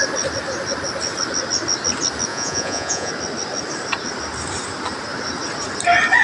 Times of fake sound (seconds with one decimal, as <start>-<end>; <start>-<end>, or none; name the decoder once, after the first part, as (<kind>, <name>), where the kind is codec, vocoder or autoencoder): 2.3-3.1 (vocoder, Vocos)